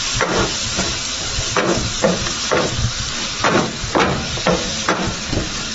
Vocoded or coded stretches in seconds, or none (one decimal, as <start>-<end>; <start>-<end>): 0.0-0.4; 1.4-5.7

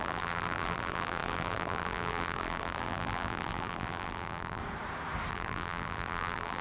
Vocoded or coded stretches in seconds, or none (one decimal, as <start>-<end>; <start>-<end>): 0.0-4.6; 5.3-6.6

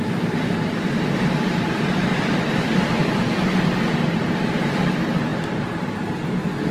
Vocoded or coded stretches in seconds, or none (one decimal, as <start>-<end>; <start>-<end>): 0.0-2.1; 4.6-6.7

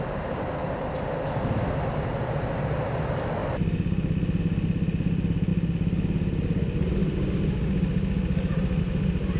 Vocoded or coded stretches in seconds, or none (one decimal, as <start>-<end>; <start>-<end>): none

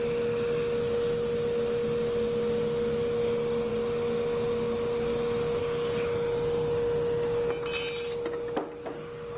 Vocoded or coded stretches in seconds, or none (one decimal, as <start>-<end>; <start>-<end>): none

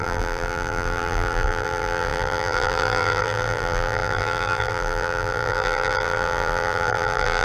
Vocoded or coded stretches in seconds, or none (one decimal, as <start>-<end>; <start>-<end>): 0.0-7.4

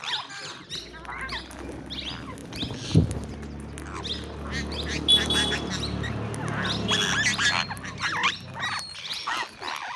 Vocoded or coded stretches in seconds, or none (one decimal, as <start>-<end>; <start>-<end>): none

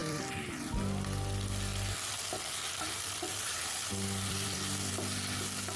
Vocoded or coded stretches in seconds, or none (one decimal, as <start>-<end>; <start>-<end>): 0.0-0.7; 1.7-4.9